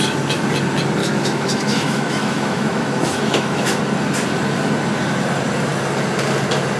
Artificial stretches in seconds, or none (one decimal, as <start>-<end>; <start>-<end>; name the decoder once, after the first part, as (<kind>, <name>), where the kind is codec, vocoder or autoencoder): 1.0-3.8 (autoencoder, DAC-VAE)